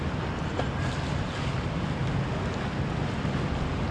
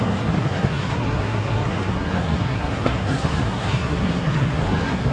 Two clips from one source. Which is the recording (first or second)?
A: first